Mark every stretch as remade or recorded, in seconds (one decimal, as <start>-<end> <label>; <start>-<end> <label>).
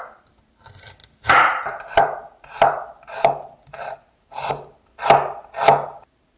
0.0-1.0 recorded; 1.0-4.5 remade; 4.5-6.4 recorded